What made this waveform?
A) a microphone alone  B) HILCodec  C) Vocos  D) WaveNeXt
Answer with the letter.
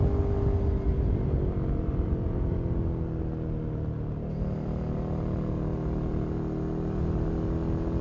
A